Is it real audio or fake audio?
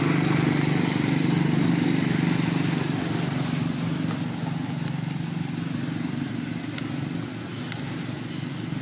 real